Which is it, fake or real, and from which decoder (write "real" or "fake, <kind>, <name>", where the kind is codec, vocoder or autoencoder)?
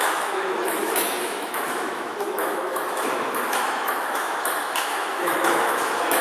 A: fake, autoencoder, DAC-VAE